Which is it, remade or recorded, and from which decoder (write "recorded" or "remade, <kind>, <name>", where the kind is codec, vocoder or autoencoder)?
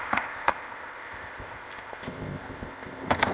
remade, codec, ZipCodec